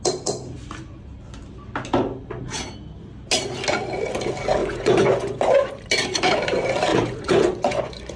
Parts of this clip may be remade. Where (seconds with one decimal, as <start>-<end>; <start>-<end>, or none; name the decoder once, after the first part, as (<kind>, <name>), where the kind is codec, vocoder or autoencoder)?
4.6-5.7 (vocoder, Vocos); 6.9-8.2